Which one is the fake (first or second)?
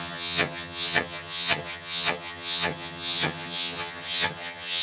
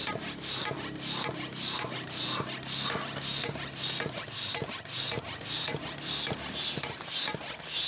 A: first